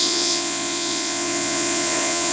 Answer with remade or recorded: remade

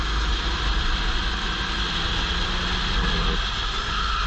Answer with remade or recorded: recorded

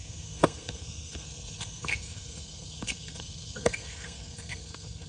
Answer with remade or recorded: remade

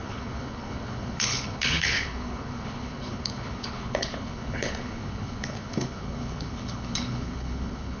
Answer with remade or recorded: remade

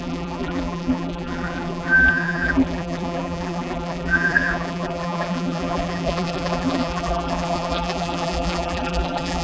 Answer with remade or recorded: remade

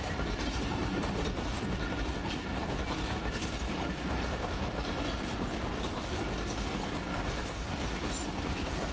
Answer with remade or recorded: remade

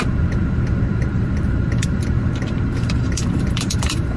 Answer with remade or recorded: remade